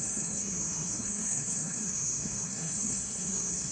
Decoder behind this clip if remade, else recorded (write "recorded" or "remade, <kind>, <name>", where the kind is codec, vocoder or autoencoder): remade, codec, SNAC